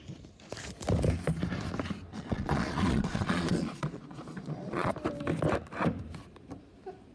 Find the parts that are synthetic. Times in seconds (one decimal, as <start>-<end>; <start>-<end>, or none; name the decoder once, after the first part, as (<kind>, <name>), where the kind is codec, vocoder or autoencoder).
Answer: 2.1-4.9 (vocoder, Vocos)